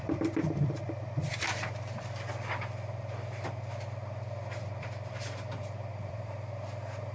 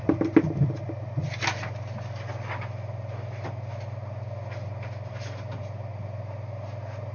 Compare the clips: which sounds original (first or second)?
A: second